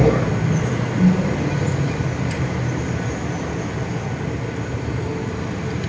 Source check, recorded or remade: recorded